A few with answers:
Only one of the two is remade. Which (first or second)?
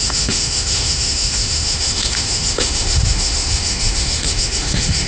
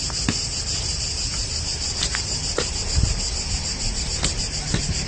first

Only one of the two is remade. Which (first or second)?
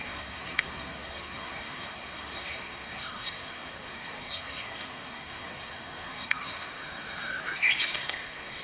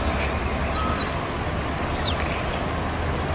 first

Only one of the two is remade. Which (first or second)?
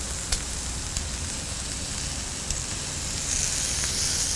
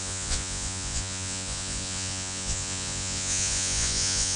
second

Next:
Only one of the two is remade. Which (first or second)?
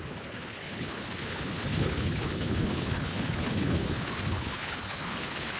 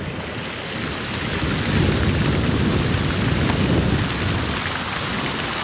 first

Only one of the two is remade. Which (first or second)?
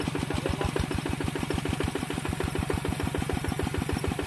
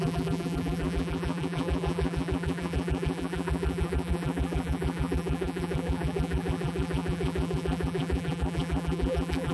second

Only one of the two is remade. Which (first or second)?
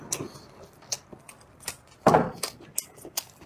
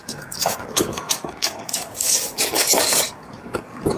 second